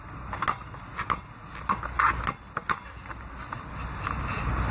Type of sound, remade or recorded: recorded